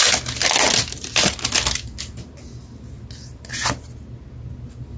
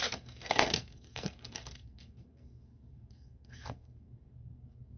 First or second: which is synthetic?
second